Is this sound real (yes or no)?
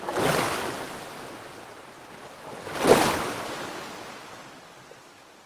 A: yes